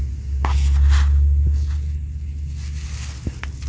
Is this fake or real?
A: real